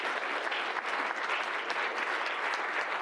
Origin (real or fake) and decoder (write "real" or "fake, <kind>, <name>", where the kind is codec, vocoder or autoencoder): real